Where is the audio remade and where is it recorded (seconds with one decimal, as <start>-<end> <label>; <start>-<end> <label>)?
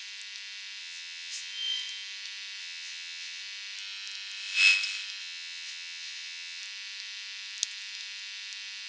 0.0-0.8 recorded; 0.8-1.5 remade; 1.5-2.6 recorded; 2.6-3.4 remade; 3.4-5.2 recorded; 5.2-6.6 remade; 6.6-8.9 recorded